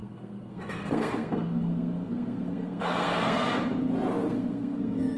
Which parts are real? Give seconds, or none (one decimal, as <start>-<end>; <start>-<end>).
3.5-4.3